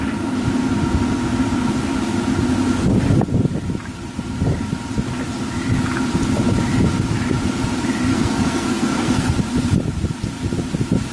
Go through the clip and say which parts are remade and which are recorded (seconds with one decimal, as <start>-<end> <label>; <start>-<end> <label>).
0.0-8.1 recorded; 8.1-9.3 remade; 9.3-11.1 recorded